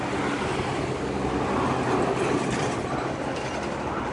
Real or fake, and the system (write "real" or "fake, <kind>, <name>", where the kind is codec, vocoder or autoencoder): real